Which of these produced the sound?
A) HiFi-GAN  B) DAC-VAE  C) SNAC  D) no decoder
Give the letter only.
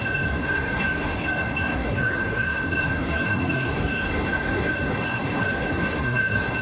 C